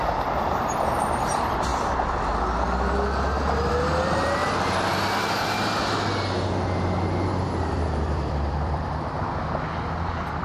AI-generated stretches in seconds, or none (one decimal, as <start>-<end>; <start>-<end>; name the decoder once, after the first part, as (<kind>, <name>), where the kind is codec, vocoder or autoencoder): 0.0-1.7 (vocoder, BigVGAN v2); 3.7-4.4; 7.7-10.4